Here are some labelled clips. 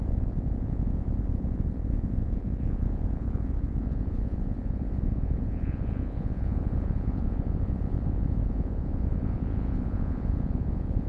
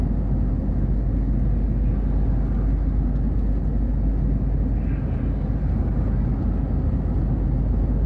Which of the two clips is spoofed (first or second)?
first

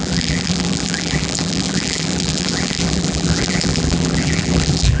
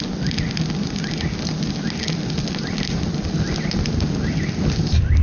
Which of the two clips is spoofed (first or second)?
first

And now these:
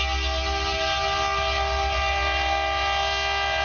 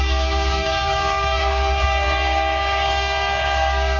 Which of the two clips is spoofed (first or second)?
second